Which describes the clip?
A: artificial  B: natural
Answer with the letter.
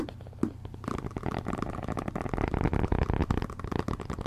A